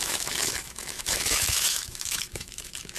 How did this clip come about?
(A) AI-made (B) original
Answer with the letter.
A